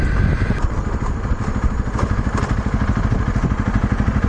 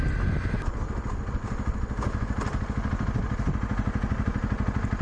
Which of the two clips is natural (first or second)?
second